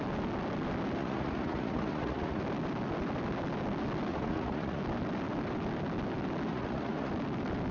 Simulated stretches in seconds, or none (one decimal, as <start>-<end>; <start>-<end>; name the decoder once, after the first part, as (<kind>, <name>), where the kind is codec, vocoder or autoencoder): 1.0-2.4 (vocoder, Vocos); 4.1-4.8; 6.5-7.1